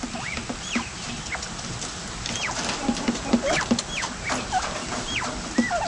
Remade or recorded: recorded